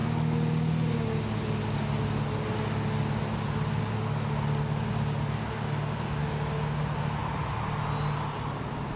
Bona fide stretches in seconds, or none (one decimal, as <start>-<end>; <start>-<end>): 0.0-6.2; 6.8-9.0